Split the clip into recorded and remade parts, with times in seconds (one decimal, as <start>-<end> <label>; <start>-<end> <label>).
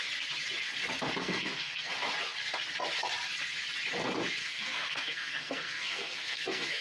0.0-1.2 recorded; 1.2-1.9 remade; 1.9-4.4 recorded; 4.4-6.8 remade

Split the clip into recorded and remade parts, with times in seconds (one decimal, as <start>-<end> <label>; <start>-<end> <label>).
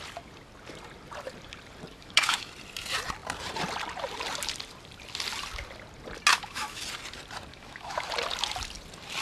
0.0-1.9 recorded; 1.9-2.5 remade; 2.5-6.3 recorded; 6.3-6.8 remade; 6.8-7.5 recorded; 7.5-8.1 remade; 8.1-9.2 recorded